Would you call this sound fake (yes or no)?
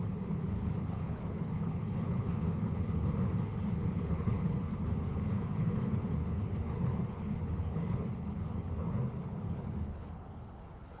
yes